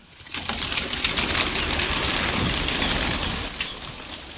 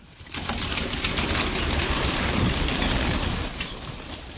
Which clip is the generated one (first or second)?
second